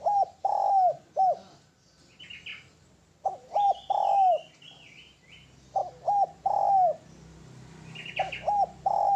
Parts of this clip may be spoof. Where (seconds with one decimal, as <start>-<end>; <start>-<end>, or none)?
none